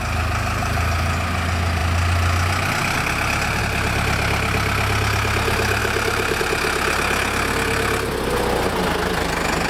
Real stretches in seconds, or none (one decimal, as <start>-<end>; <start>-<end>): 0.0-5.8; 6.4-9.7